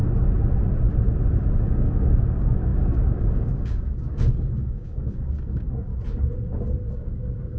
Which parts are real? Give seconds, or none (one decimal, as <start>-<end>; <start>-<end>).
0.0-1.6; 5.9-6.9